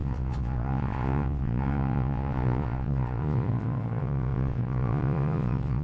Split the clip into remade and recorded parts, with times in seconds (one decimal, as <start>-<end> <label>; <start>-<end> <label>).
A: 0.0-5.8 remade